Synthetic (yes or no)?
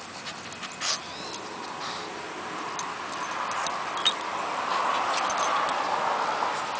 no